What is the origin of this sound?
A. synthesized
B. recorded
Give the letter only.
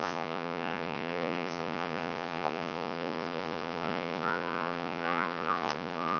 A